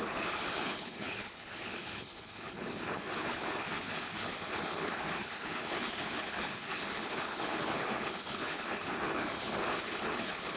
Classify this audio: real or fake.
fake